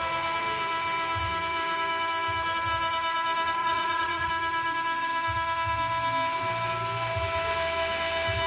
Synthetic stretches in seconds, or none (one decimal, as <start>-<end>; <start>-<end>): 3.6-4.3